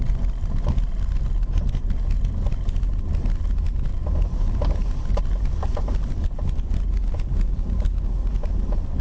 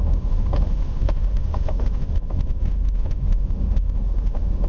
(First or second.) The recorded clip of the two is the first